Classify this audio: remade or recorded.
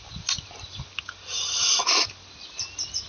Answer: recorded